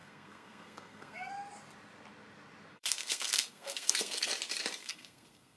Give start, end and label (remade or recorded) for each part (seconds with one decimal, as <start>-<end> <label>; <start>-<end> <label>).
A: 0.0-1.3 remade; 1.3-2.7 recorded; 2.7-4.3 remade; 4.3-4.8 recorded; 4.8-5.6 remade

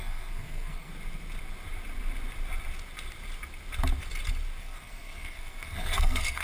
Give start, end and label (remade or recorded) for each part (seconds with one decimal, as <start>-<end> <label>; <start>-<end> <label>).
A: 0.0-0.9 remade; 0.9-4.6 recorded; 4.6-6.4 remade

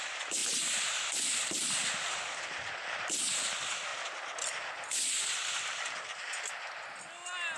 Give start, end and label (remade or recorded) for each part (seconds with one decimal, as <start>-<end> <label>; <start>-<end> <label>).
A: 0.0-3.9 remade; 3.9-4.7 recorded; 4.7-7.6 remade

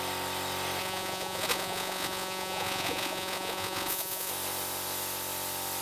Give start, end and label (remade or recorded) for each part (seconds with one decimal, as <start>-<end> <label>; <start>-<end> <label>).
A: 0.0-0.8 recorded; 0.8-4.3 remade; 4.3-5.8 recorded

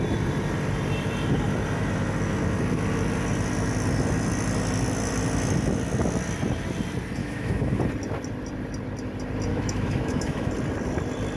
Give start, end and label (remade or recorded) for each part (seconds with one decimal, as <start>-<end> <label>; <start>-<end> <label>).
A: 0.0-7.2 recorded; 7.2-7.8 remade; 7.8-9.5 recorded; 9.5-10.5 remade; 10.5-11.4 recorded

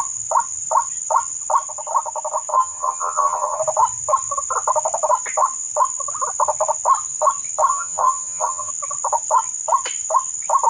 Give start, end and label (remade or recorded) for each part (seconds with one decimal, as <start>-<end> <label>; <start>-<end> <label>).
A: 0.0-2.5 recorded; 2.5-3.6 remade; 3.6-7.7 recorded; 7.7-8.7 remade; 8.7-10.7 recorded